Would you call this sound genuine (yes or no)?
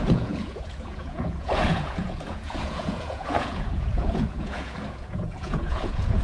no